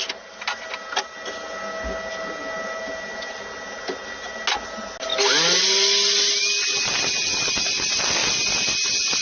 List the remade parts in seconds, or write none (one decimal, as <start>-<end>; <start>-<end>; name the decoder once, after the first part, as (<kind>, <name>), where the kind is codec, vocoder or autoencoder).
none